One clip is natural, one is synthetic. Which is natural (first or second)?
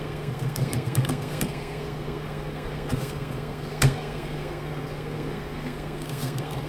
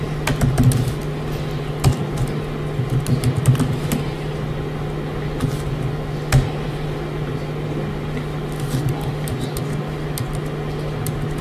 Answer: second